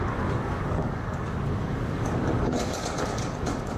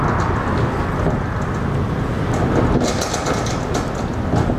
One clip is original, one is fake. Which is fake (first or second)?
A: first